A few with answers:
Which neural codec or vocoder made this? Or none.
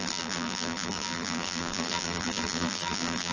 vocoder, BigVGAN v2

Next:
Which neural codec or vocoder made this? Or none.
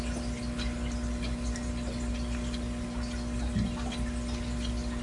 none